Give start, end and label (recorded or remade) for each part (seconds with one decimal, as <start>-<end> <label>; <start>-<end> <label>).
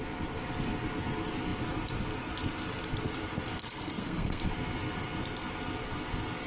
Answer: 0.0-3.6 recorded; 3.6-4.4 remade; 4.4-6.5 recorded